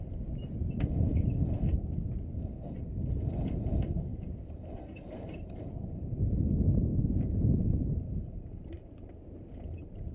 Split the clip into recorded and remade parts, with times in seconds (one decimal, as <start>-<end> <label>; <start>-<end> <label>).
0.0-4.1 recorded; 4.1-6.2 remade; 6.2-6.9 recorded; 6.9-10.1 remade